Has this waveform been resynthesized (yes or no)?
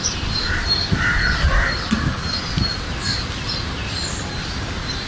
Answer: no